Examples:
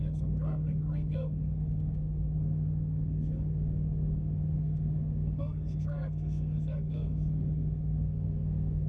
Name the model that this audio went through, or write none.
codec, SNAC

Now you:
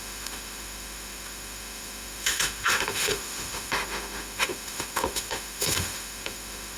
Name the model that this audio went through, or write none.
autoencoder, DAC-VAE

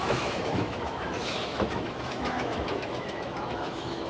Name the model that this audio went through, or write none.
autoencoder, DAC-VAE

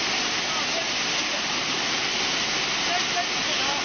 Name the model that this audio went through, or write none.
none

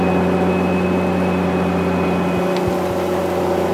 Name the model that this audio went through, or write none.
none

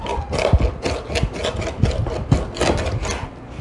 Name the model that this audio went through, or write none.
none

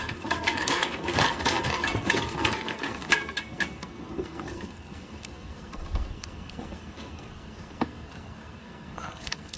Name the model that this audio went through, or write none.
codec, SNAC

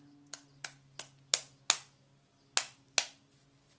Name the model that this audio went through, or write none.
none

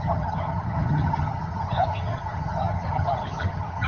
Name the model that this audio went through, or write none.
vocoder, HiFi-GAN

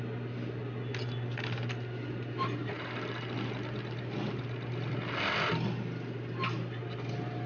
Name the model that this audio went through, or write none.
none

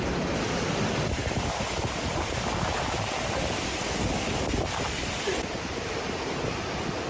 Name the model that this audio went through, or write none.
none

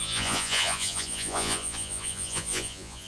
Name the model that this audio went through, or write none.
vocoder, Vocos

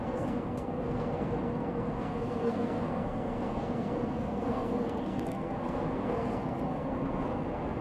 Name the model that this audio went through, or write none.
codec, SNAC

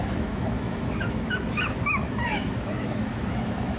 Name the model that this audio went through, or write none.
autoencoder, DAC-VAE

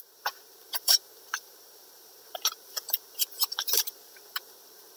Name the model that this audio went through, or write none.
vocoder, BigVGAN v2